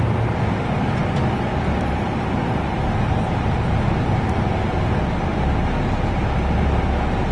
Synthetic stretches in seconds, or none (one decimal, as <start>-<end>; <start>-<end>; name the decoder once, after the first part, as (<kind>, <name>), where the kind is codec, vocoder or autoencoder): none